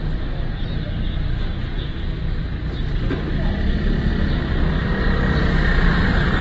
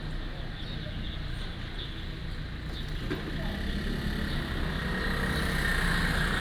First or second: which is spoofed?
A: first